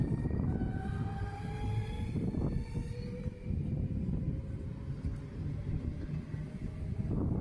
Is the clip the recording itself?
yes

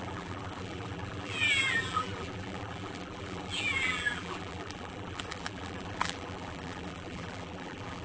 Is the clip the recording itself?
no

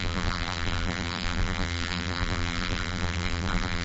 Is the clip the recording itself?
no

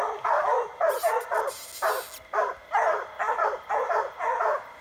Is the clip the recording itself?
yes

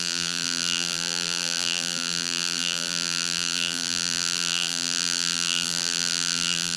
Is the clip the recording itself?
no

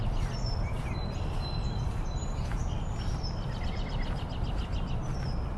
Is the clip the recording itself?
no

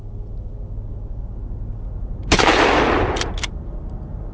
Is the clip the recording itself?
yes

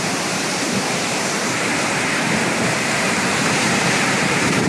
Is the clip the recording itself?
no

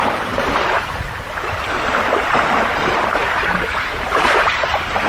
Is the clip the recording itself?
no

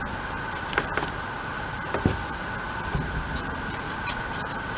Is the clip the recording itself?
no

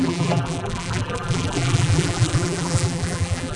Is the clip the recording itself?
no